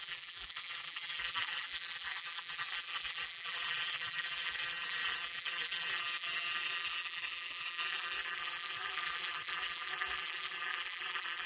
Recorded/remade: remade